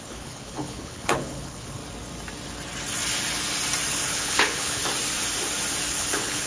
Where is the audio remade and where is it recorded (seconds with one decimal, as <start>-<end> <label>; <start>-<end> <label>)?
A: 0.0-1.8 remade; 1.8-3.9 recorded; 3.9-4.8 remade; 4.8-5.9 recorded; 5.9-6.5 remade